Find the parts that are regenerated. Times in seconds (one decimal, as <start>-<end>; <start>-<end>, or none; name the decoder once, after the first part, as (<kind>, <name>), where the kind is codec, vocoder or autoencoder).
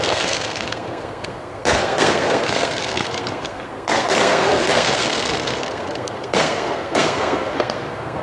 0.0-8.2 (codec, SNAC)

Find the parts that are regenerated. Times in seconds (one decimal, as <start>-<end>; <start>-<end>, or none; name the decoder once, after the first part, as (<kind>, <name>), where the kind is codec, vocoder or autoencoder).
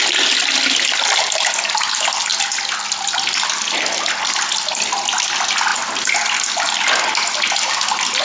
none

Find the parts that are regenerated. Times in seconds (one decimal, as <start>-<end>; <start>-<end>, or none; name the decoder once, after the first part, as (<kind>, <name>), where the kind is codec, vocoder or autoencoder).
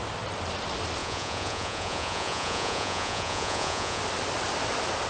1.0-4.0 (vocoder, Vocos)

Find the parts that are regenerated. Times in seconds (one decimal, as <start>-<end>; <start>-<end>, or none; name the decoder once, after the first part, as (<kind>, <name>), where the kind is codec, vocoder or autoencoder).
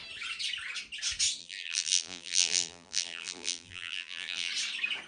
1.4-4.5 (vocoder, BigVGAN v2)